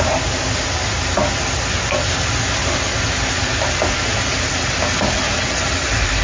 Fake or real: real